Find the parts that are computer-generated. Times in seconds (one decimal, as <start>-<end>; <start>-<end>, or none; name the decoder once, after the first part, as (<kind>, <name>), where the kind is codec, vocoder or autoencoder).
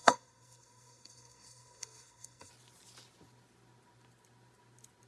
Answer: 0.0-2.5 (codec, SNAC)